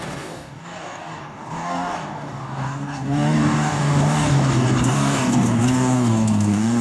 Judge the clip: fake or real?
fake